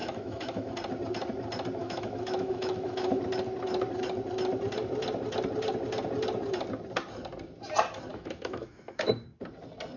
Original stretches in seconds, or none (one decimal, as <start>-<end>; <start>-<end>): 0.7-1.8; 3.2-8.1; 9.1-10.0